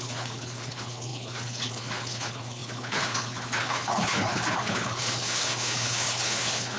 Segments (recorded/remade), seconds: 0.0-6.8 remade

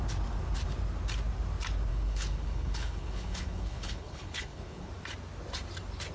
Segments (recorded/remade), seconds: 0.0-1.9 recorded; 1.9-4.9 remade; 4.9-6.1 recorded